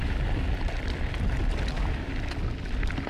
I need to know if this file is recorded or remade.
recorded